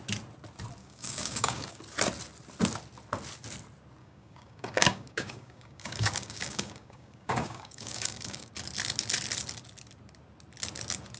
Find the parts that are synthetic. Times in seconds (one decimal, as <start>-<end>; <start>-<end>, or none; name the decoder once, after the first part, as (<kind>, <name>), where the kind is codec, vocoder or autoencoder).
0.8-1.8 (codec, DAC); 4.0-8.5